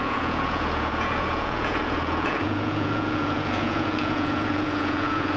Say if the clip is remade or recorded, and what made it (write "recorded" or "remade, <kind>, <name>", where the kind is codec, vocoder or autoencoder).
remade, vocoder, Vocos